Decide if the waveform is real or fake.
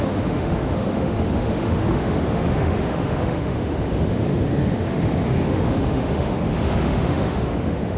fake